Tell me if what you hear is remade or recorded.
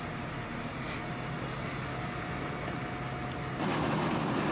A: recorded